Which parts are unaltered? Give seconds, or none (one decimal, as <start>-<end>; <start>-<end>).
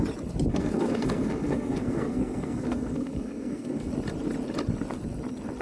0.0-0.5; 3.9-5.6